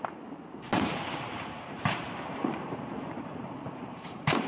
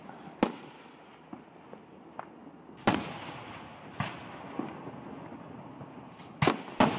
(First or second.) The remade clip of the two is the first